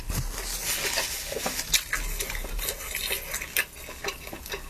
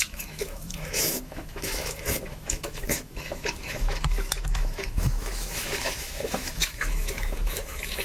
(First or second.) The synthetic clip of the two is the second